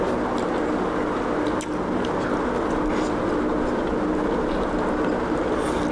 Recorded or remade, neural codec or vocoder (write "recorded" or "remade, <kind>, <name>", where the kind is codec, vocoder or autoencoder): recorded